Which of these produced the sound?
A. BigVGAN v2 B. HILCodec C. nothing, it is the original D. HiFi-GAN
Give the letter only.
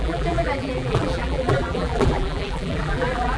A